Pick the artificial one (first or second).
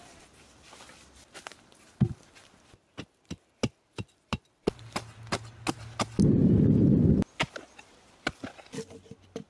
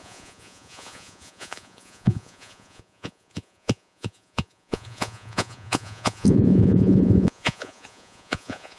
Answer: second